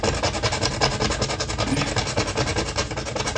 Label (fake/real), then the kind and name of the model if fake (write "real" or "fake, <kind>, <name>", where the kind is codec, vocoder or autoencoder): real